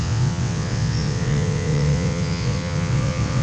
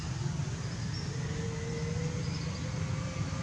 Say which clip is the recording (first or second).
second